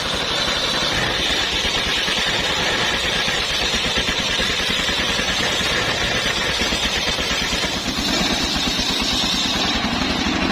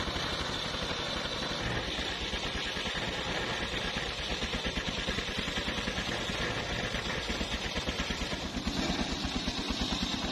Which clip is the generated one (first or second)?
first